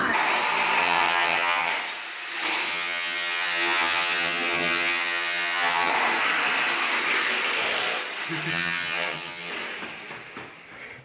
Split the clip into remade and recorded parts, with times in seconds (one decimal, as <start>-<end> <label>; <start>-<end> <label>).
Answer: 0.0-0.8 recorded; 0.8-1.7 remade; 1.7-2.7 recorded; 2.7-5.9 remade; 5.9-8.5 recorded; 8.5-9.5 remade; 9.5-11.0 recorded